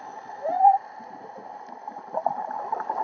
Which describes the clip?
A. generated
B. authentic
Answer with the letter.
B